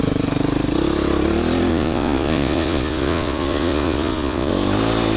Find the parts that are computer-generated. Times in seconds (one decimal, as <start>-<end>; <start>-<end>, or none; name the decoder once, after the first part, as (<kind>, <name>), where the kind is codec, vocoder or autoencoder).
1.7-4.5 (vocoder, Vocos)

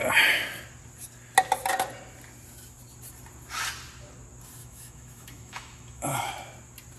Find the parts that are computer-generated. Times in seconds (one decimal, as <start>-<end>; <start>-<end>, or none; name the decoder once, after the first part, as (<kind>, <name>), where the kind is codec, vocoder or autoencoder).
4.6-6.3 (autoencoder, DAC-VAE)

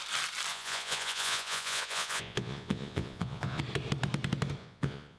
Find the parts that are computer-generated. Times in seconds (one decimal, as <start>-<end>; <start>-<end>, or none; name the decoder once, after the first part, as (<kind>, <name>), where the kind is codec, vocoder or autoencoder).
0.5-3.6 (vocoder, Vocos); 4.6-5.2

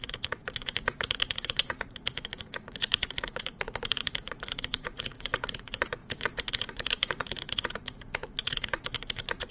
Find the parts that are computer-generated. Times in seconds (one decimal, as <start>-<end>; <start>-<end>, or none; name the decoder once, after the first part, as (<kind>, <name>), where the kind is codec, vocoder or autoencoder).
0.0-9.5 (vocoder, Vocos)